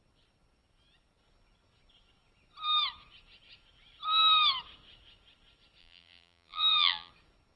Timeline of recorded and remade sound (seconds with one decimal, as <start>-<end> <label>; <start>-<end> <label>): 0.0-5.8 recorded; 5.8-7.1 remade; 7.1-7.6 recorded